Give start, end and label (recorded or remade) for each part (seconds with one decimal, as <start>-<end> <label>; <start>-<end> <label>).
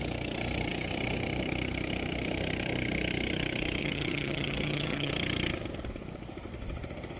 0.0-3.8 recorded; 3.8-5.1 remade; 5.1-7.2 recorded